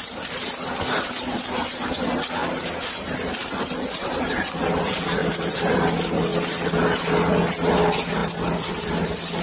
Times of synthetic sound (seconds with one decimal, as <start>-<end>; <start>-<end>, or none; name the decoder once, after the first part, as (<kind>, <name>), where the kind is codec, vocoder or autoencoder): none